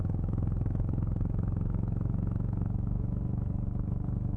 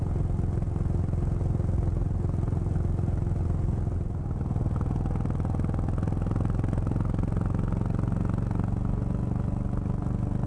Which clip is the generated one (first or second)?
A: first